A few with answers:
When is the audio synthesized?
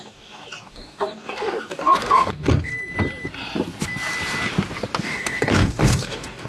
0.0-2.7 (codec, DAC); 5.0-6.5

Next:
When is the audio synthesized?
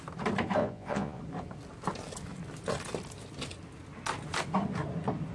0.6-1.2 (vocoder, Vocos)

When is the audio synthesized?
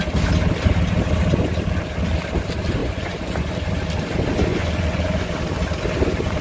2.8-3.5 (vocoder, Vocos); 4.5-5.3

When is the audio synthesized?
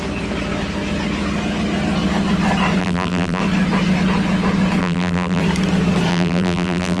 2.8-3.4 (vocoder, BigVGAN v2); 4.8-5.4; 6.1-7.0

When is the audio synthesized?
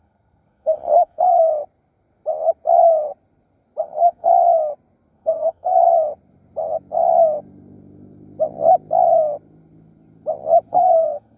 0.0-1.5 (codec, SNAC); 3.8-4.3; 5.1-5.8; 10.7-11.4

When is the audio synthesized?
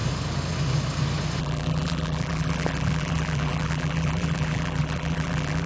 1.4-5.7 (vocoder, BigVGAN v2)